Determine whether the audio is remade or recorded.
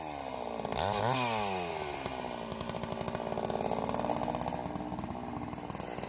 recorded